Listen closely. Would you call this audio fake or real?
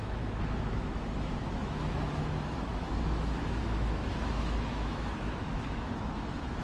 fake